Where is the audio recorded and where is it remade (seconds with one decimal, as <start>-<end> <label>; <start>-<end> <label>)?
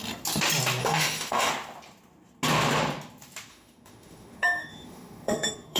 0.0-0.8 recorded; 0.8-1.5 remade; 1.5-3.5 recorded; 3.5-5.8 remade